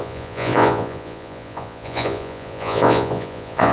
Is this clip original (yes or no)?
no